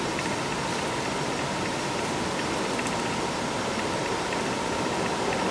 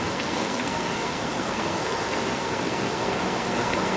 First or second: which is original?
first